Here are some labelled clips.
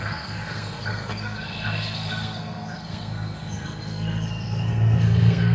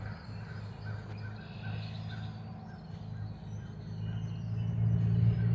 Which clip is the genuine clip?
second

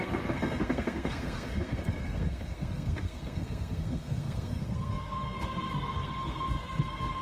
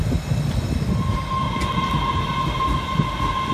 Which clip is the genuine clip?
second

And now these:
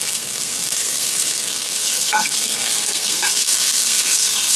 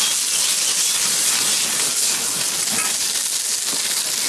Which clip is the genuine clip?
second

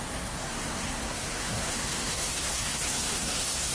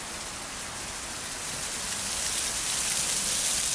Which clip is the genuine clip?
second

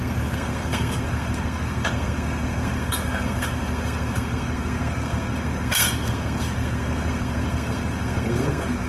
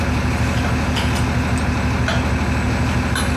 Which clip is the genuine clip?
second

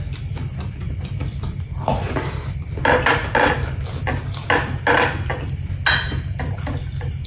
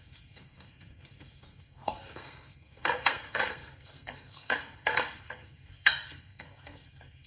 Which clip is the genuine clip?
first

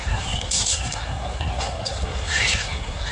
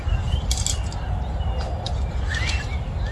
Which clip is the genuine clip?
second